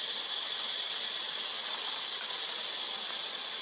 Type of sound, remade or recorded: recorded